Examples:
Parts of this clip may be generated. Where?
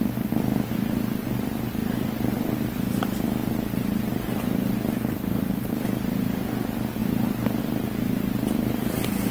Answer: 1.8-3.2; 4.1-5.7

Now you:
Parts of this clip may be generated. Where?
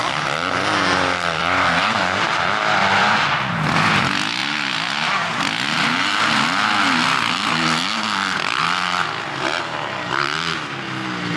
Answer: 1.4-2.0; 2.8-3.5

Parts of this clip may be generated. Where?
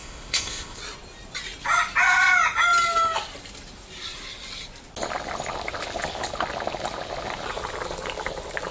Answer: 0.0-0.8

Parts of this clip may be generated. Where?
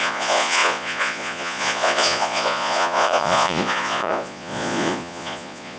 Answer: 0.0-5.8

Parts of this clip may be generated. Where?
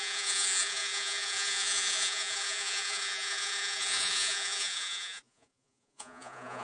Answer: 0.0-6.6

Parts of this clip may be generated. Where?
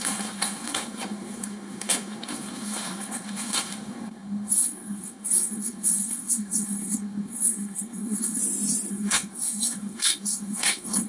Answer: 0.0-8.4; 8.9-11.1